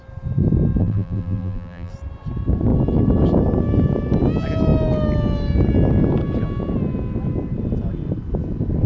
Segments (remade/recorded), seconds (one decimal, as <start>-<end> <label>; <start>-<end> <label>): 0.0-0.8 recorded; 0.8-1.9 remade; 1.9-8.9 recorded